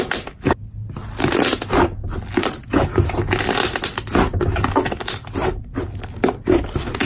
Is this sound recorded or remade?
recorded